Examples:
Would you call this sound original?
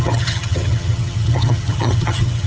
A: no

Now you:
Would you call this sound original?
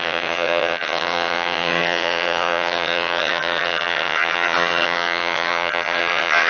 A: no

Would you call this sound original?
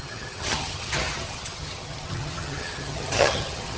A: no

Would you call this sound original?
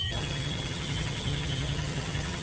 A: no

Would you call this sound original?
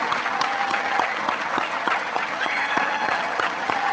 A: no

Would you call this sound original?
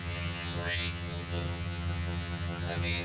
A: no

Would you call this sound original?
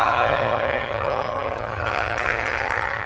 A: no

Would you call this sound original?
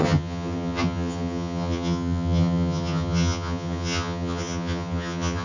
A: no